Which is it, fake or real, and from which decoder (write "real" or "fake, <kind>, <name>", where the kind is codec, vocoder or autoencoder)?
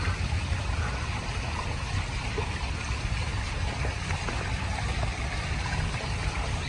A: fake, vocoder, BigVGAN v2